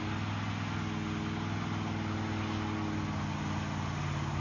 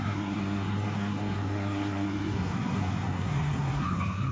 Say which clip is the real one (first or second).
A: first